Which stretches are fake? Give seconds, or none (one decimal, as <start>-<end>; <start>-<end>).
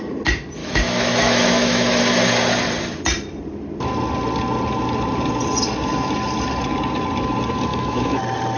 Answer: 0.6-2.0; 7.7-8.2